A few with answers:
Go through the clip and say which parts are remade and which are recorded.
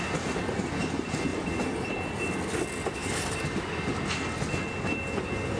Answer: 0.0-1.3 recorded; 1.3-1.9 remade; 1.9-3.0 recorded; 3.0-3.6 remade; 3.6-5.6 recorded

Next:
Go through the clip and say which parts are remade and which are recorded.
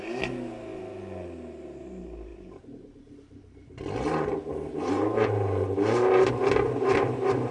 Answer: 0.0-2.3 recorded; 2.3-6.3 remade; 6.3-7.5 recorded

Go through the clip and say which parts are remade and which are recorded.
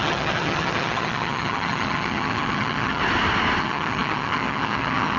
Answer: 0.0-3.0 remade; 3.0-3.6 recorded; 3.6-5.2 remade